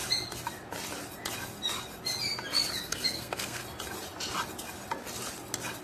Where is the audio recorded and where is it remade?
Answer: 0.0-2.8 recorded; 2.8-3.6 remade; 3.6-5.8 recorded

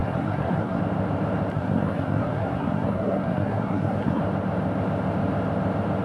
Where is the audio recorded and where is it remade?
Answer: 0.0-0.8 remade; 0.8-1.5 recorded; 1.5-4.2 remade; 4.2-6.0 recorded

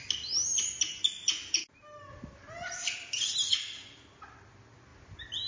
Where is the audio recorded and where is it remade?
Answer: 0.0-5.5 recorded

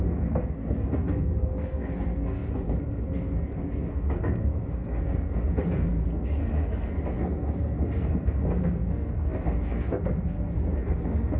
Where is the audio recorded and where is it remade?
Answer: 0.0-11.4 remade

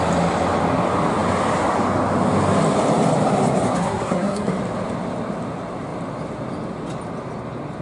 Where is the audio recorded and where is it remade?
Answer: 0.0-3.7 recorded; 3.7-4.5 remade; 4.5-7.8 recorded

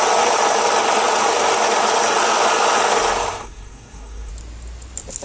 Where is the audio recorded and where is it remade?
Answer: 0.0-3.4 recorded; 3.4-4.3 remade; 4.3-5.2 recorded

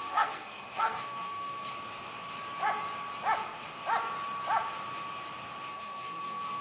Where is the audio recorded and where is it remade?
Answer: 0.0-1.7 remade; 1.7-5.7 recorded; 5.7-6.6 remade